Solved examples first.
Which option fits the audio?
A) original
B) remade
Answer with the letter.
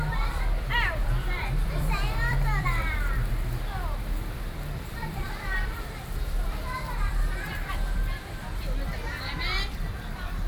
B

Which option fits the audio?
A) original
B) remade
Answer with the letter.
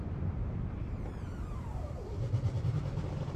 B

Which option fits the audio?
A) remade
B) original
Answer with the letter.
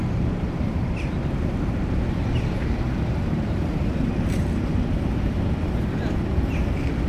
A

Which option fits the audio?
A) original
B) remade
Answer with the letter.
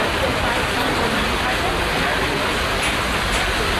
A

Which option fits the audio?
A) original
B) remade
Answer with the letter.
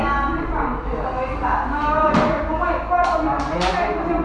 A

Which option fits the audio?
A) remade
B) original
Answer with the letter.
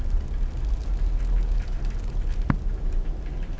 B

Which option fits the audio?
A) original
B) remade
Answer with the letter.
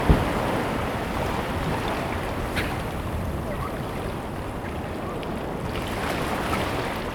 B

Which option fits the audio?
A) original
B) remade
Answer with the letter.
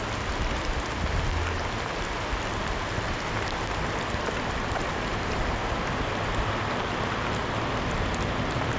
A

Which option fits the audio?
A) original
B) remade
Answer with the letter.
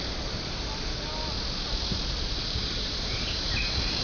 B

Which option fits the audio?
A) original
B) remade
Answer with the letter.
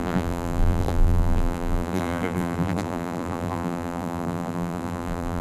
B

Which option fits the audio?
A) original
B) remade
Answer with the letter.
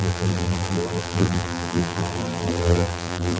B